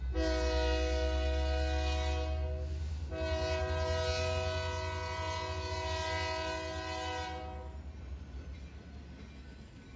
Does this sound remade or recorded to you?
recorded